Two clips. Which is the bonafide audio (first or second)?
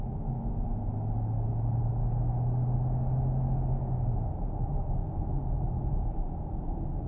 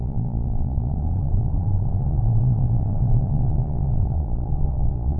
first